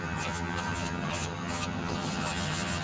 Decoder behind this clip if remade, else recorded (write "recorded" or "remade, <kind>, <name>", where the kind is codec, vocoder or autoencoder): remade, vocoder, HiFi-GAN